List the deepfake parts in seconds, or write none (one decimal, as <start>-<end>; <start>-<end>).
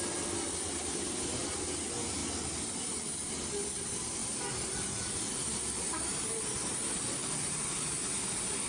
none